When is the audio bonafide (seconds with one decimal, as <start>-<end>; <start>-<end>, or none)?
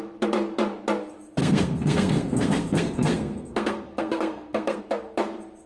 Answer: 0.0-1.4; 4.8-5.7